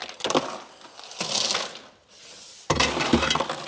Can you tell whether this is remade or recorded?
recorded